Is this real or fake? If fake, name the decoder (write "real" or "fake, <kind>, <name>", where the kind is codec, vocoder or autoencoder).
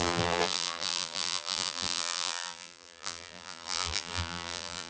fake, vocoder, BigVGAN v2